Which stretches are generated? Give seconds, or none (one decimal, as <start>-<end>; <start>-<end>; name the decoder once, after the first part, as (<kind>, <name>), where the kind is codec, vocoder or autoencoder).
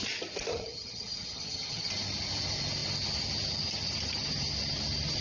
0.5-1.9 (vocoder, HiFi-GAN)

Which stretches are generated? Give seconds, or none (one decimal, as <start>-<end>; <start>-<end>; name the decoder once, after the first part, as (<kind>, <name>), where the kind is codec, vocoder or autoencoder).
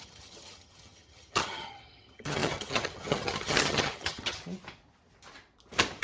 0.0-4.4 (vocoder, HiFi-GAN)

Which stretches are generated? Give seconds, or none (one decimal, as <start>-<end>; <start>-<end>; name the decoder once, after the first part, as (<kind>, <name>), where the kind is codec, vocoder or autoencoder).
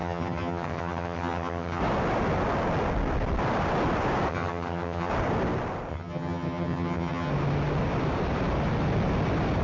0.0-1.8 (vocoder, HiFi-GAN); 4.3-5.1; 5.9-7.3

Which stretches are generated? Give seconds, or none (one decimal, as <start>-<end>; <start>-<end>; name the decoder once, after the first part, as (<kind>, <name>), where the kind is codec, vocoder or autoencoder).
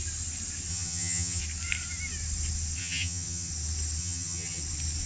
0.7-1.4 (vocoder, HiFi-GAN); 2.8-3.5; 4.0-4.6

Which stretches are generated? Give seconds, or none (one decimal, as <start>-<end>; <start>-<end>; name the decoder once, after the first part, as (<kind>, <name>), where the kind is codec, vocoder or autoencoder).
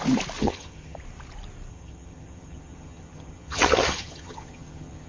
0.4-1.0 (vocoder, HiFi-GAN); 1.7-5.1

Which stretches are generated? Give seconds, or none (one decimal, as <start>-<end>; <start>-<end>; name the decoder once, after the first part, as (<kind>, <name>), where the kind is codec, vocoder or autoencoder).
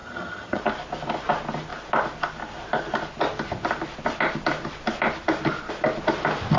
0.0-0.6 (vocoder, HiFi-GAN)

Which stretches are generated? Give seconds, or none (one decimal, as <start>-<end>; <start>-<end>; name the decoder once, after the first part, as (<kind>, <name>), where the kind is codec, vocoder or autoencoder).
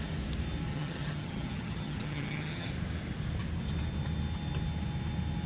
0.7-2.7 (vocoder, HiFi-GAN)